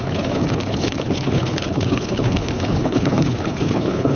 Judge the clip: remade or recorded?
remade